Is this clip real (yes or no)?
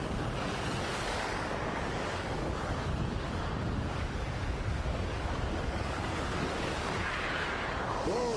no